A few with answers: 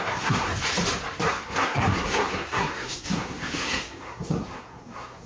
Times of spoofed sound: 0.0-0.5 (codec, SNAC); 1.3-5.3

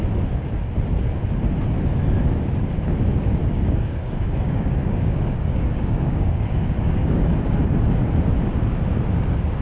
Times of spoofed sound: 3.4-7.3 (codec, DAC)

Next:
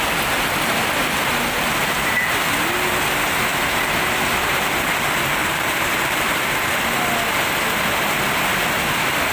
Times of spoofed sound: 5.4-6.3 (vocoder, BigVGAN v2)